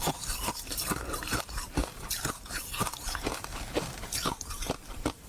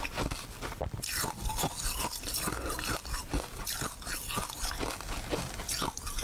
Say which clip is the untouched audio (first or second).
second